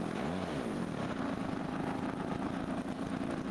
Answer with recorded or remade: recorded